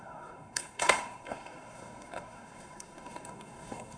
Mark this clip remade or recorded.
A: remade